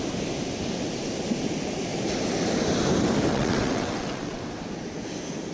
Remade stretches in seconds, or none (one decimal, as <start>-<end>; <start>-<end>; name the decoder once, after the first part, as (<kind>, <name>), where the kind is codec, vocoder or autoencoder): 3.3-4.4 (vocoder, WaveNeXt)